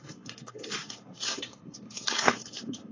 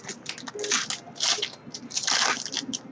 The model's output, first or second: first